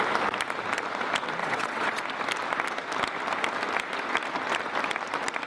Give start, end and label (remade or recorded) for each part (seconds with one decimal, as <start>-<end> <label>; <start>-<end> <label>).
0.0-1.4 recorded; 1.4-2.0 remade; 2.0-5.5 recorded